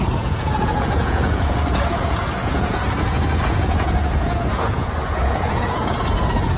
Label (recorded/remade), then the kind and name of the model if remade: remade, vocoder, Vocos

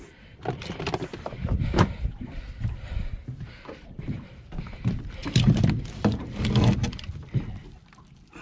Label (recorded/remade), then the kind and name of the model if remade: remade, vocoder, BigVGAN v2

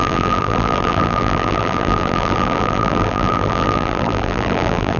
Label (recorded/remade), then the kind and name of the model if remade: remade, vocoder, BigVGAN v2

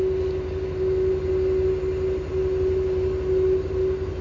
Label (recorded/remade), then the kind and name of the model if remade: recorded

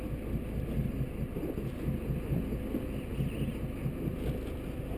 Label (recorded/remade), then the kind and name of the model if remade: recorded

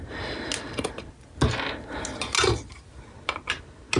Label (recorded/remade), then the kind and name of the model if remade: recorded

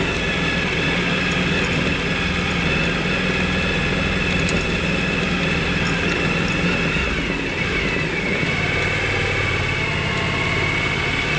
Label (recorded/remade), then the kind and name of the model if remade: recorded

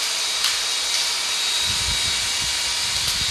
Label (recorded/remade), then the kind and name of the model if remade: recorded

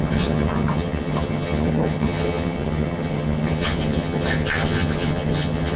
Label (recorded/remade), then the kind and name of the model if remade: remade, vocoder, HiFi-GAN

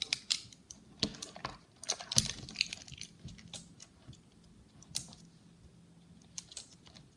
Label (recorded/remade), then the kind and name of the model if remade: recorded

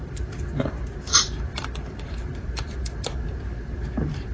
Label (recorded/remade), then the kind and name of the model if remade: remade, vocoder, BigVGAN v2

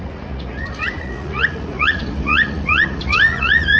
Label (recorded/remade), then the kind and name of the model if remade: remade, vocoder, Vocos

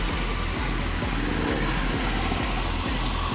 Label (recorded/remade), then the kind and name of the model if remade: recorded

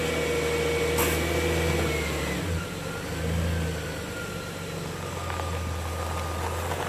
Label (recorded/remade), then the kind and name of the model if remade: recorded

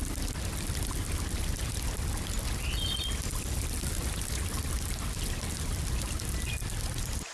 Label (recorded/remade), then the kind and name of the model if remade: recorded